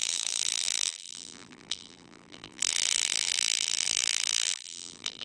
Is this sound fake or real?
fake